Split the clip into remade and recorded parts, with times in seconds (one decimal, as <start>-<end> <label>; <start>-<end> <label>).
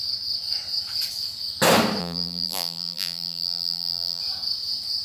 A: 0.0-2.0 recorded; 2.0-4.2 remade; 4.2-5.0 recorded